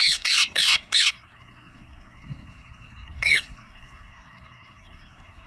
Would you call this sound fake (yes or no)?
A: yes